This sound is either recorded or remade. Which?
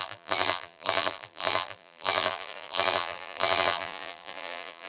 remade